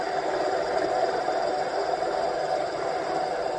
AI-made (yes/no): no